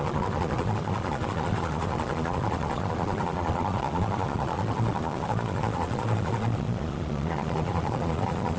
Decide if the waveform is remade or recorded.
remade